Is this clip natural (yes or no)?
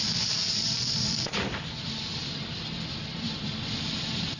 no